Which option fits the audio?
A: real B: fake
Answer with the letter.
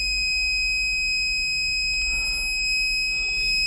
A